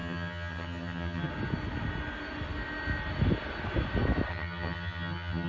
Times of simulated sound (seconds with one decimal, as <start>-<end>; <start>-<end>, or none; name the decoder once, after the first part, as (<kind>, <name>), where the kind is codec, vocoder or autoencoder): 0.0-1.3 (vocoder, HiFi-GAN); 4.3-5.5